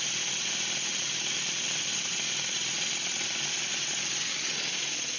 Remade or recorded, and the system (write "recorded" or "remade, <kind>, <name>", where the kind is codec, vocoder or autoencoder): recorded